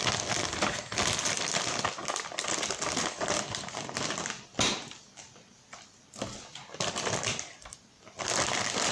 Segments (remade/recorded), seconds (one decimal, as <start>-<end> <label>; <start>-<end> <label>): 0.0-8.9 recorded